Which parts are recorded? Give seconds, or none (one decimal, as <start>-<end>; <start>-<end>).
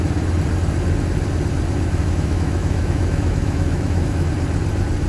0.0-2.0; 4.3-5.1